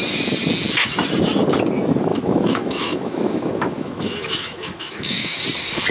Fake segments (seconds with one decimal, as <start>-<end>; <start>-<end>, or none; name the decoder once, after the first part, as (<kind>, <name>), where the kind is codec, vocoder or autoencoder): 2.1-5.4 (autoencoder, DAC-VAE)